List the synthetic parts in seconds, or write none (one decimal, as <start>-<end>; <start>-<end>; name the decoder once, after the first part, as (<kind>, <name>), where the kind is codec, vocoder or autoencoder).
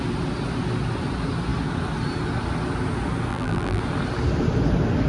3.3-3.8 (vocoder, BigVGAN v2)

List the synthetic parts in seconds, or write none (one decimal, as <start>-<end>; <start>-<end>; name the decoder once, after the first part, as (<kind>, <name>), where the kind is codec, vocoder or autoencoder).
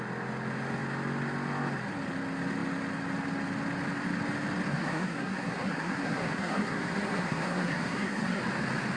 4.7-8.4 (codec, SNAC)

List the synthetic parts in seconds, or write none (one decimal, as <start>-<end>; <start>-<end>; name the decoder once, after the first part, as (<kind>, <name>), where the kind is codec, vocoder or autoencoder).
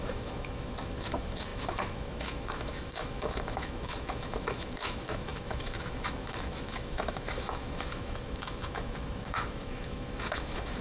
0.0-10.8 (autoencoder, DAC-VAE)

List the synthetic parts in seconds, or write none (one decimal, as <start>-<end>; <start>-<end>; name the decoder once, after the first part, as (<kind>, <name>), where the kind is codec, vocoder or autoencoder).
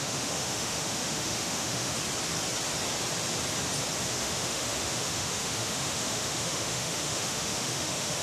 0.0-2.0 (autoencoder, DAC-VAE); 4.1-8.2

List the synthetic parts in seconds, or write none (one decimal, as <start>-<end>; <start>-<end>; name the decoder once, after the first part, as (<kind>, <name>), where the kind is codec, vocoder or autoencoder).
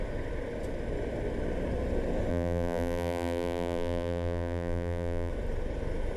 2.3-5.3 (vocoder, BigVGAN v2)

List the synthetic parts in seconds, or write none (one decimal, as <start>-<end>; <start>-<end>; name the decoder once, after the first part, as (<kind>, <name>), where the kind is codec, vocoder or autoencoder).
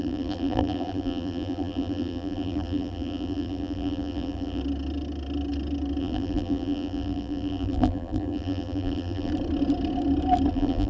0.0-4.6 (vocoder, BigVGAN v2); 6.0-9.3; 10.5-10.9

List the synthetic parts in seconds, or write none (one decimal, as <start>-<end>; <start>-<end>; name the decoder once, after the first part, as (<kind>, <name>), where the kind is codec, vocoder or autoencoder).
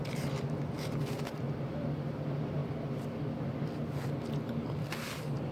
none